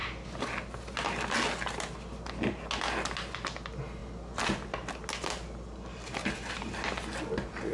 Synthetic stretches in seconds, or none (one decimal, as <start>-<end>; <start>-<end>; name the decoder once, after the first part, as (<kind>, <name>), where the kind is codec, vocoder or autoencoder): none